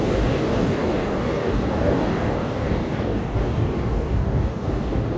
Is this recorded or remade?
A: remade